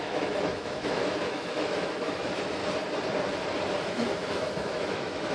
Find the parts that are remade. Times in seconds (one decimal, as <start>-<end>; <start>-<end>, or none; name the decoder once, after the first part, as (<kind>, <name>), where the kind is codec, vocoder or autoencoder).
0.0-2.6 (autoencoder, DAC-VAE); 3.8-5.3

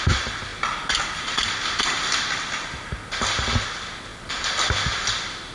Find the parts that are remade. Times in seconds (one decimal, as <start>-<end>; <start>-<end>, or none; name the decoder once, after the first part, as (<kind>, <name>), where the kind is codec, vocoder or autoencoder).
none

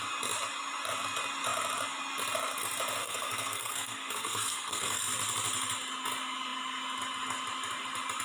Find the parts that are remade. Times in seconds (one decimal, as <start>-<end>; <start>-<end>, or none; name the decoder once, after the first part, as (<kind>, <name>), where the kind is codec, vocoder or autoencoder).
3.0-5.0 (codec, SNAC)

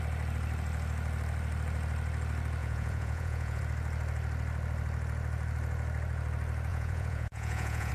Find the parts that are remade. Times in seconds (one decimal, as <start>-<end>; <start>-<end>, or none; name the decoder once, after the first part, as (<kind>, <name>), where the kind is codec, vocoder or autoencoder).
2.6-3.6 (vocoder, Vocos); 6.7-7.9

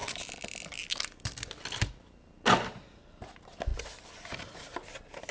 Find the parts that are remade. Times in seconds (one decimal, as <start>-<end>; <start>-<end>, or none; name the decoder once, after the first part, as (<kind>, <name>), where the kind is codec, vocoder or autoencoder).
0.0-3.2 (vocoder, BigVGAN v2)

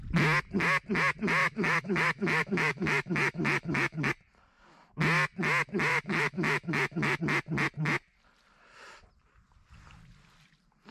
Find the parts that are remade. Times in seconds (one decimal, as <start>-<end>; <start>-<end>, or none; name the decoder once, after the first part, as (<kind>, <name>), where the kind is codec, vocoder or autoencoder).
1.4-4.1 (autoencoder, DAC-VAE); 5.9-7.2

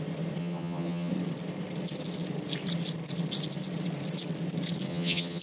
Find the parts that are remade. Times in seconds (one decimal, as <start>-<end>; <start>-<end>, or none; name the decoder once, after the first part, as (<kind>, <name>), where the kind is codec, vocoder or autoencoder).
0.4-1.1 (vocoder, HiFi-GAN); 4.9-5.4

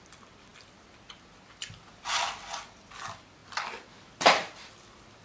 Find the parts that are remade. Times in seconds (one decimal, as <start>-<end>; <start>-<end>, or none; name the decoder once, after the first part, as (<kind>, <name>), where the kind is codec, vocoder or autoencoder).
none